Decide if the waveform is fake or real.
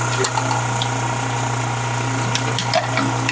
real